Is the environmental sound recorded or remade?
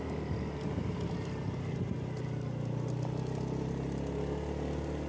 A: recorded